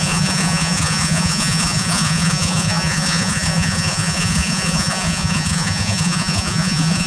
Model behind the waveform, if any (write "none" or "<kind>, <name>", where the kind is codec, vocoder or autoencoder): vocoder, Vocos